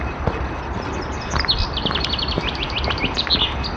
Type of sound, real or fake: real